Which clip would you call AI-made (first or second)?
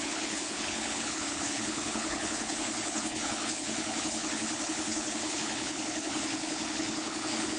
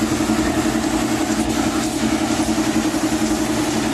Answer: first